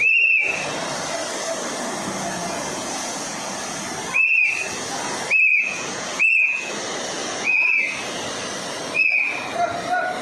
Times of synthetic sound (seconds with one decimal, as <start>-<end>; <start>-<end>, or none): 2.4-3.8; 5.5-6.7; 7.2-7.8